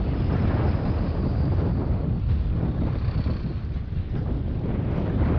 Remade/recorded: recorded